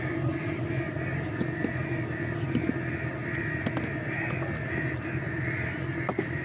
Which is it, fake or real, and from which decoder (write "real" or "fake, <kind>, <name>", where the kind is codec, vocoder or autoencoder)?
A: real